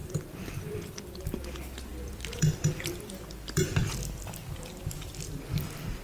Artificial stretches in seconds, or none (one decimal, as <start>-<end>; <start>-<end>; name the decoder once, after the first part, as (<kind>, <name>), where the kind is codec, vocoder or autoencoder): 0.0-1.4 (vocoder, BigVGAN v2); 1.9-5.4